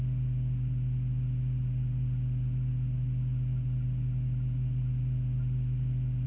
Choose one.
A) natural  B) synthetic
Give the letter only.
A